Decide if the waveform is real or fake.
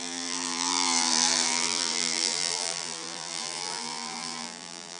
fake